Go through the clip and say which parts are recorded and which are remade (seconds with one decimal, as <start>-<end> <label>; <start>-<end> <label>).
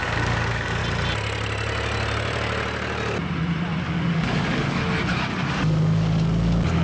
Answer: 0.0-0.8 remade; 0.8-3.8 recorded; 3.8-4.8 remade; 4.8-5.5 recorded; 5.5-6.8 remade